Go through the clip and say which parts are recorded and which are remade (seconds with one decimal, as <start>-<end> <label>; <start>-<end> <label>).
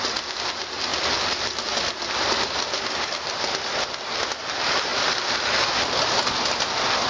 0.0-7.1 recorded